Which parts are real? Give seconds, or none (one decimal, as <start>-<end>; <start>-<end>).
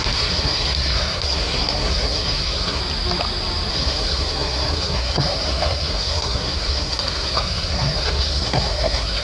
2.8-3.7